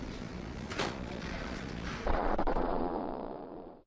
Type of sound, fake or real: fake